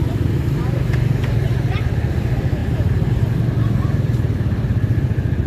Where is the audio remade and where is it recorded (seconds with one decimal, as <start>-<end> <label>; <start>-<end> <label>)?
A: 0.0-2.6 recorded; 2.6-3.2 remade; 3.2-5.5 recorded